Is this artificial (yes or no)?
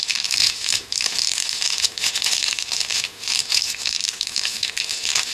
yes